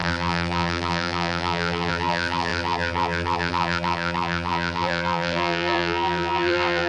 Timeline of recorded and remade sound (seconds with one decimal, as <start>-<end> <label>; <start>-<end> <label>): 0.0-6.9 remade